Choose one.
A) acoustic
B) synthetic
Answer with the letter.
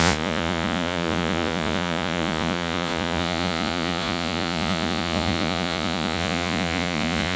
B